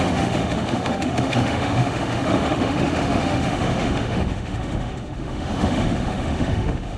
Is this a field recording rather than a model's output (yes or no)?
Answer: no